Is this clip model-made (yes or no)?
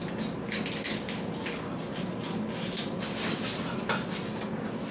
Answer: no